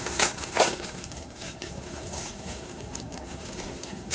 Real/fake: fake